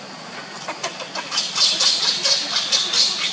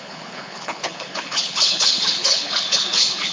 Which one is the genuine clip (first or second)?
first